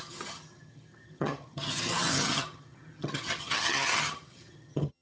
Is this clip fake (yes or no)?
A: yes